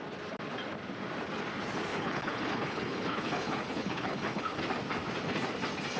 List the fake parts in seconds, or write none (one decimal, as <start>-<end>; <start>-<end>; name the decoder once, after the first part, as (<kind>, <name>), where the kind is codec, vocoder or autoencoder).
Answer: 1.9-4.6 (codec, HILCodec)